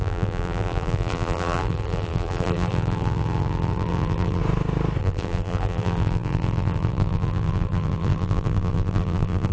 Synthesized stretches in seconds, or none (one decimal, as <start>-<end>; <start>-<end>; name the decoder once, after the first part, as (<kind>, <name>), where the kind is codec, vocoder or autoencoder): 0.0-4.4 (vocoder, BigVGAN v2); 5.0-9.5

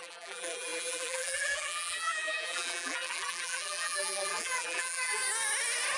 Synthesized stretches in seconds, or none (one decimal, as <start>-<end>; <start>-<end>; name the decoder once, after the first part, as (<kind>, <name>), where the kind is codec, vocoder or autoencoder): 0.0-5.2 (vocoder, BigVGAN v2)

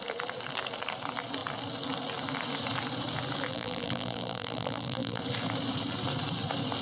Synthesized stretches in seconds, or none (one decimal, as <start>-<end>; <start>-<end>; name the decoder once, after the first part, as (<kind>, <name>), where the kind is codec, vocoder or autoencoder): 3.5-5.2 (vocoder, BigVGAN v2)

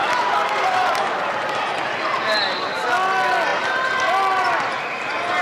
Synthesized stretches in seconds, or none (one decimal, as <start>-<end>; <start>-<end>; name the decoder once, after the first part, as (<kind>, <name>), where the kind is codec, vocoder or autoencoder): 0.0-1.2 (vocoder, BigVGAN v2)